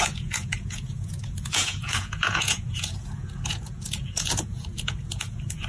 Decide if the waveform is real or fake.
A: fake